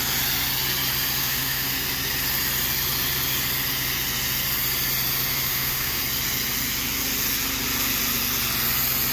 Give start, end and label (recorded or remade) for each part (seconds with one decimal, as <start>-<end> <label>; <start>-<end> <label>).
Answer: 0.0-1.2 recorded; 1.2-1.7 remade; 1.7-5.3 recorded; 5.3-6.0 remade; 6.0-9.1 recorded